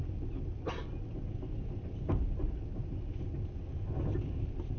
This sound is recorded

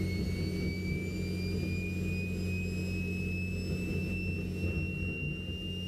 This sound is recorded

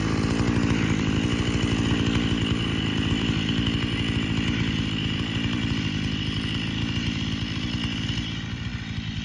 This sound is remade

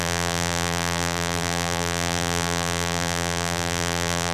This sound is remade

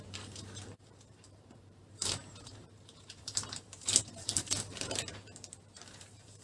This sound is remade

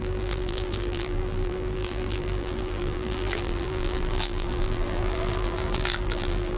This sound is remade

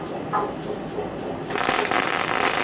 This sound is recorded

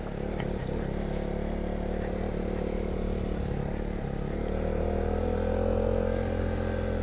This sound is recorded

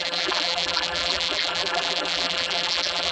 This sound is remade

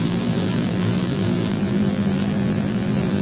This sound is remade